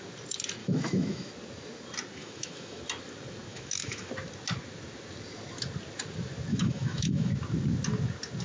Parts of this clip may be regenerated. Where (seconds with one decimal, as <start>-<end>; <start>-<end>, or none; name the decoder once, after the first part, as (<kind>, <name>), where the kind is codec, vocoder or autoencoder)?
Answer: 0.6-1.3 (autoencoder, DAC-VAE); 2.2-2.8; 3.5-4.1; 6.5-7.3